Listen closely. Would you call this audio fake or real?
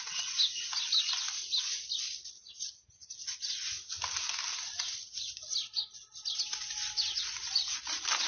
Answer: real